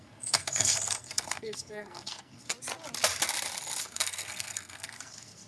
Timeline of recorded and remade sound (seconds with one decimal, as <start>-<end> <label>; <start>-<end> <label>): 0.0-2.5 remade; 2.5-3.8 recorded; 3.8-5.5 remade